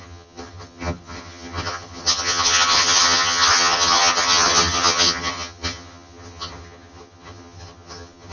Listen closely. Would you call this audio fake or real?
fake